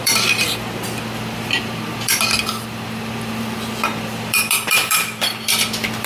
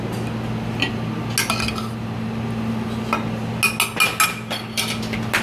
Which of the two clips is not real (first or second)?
first